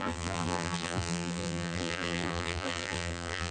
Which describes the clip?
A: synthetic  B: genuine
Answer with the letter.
A